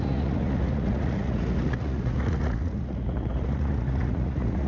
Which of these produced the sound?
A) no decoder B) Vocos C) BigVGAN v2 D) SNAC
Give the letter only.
B